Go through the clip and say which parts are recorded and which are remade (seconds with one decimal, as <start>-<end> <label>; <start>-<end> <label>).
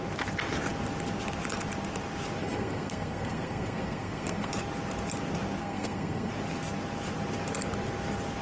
0.0-2.4 recorded; 2.4-4.5 remade; 4.5-5.6 recorded; 5.6-6.3 remade; 6.3-8.4 recorded